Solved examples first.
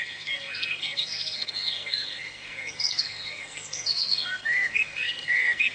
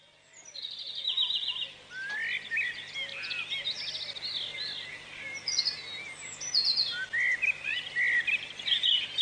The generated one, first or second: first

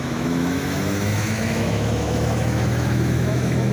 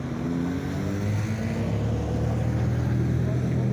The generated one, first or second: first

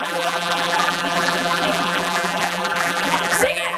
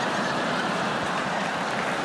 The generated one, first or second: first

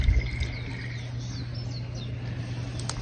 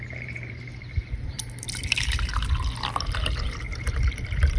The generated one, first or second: second